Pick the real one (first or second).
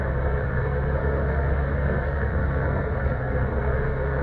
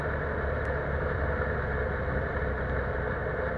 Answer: second